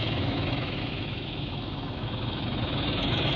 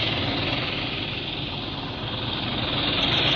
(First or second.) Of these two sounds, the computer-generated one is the first